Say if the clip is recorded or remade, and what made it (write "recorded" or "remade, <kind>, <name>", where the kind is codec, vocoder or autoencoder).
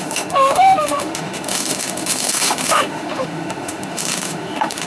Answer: remade, autoencoder, DAC-VAE